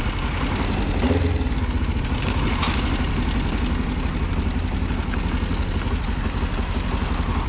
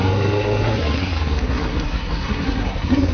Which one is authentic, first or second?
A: first